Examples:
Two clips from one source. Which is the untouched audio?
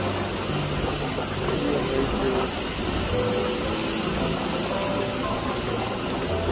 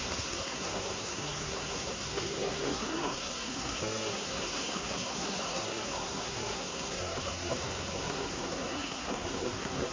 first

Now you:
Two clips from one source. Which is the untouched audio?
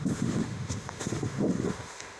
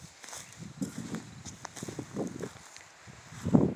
second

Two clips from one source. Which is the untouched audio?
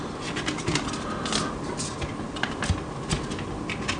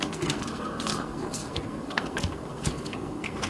first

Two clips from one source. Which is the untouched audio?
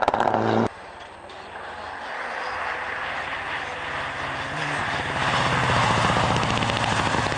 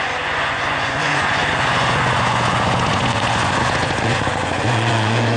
first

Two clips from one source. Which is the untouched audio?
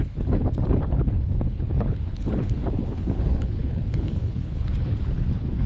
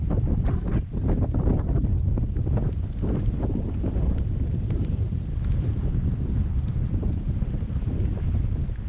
second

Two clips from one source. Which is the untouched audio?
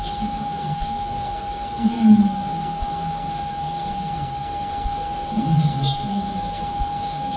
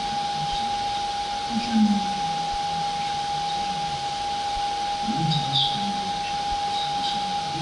second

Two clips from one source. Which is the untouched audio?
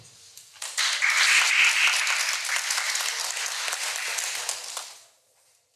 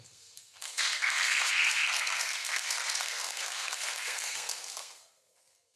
first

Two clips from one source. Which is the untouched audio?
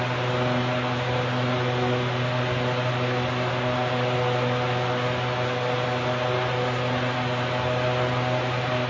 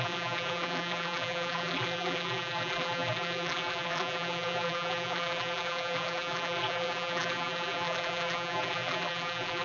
first